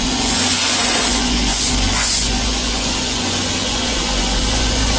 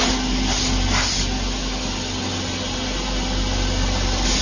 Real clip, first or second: second